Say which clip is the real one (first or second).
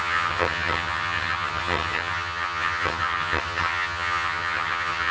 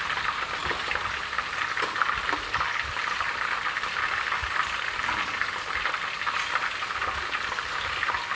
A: second